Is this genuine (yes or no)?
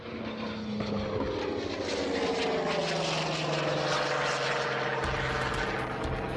yes